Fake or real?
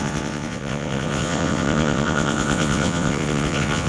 fake